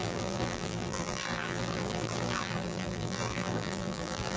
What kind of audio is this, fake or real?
fake